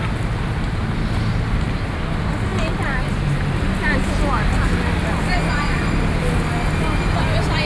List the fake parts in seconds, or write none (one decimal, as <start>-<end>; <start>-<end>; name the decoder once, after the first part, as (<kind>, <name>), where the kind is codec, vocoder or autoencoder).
none